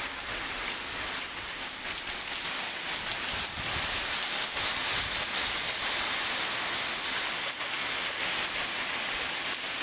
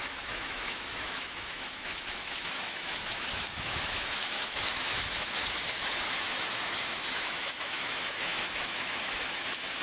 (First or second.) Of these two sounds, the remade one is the second